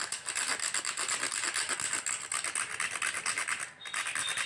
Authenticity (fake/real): real